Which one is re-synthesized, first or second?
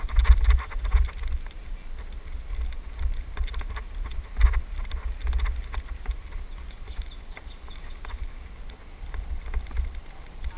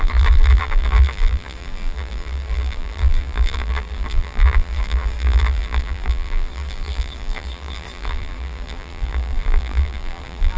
second